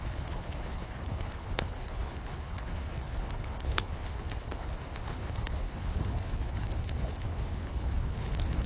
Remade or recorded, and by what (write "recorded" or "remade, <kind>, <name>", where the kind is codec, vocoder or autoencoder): remade, codec, HILCodec